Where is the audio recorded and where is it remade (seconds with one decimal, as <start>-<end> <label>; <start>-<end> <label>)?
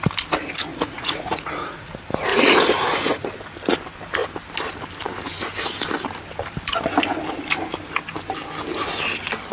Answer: 0.0-0.7 recorded; 0.7-1.9 remade; 1.9-2.3 recorded; 2.3-3.3 remade; 3.3-9.5 recorded